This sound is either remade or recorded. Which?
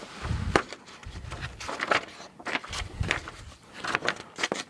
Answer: recorded